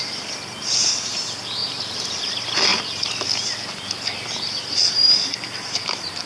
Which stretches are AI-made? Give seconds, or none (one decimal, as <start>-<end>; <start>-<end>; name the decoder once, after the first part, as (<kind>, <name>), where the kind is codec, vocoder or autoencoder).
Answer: 1.6-2.3 (vocoder, BigVGAN v2)